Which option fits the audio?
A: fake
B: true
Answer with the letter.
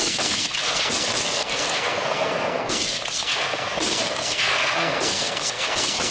A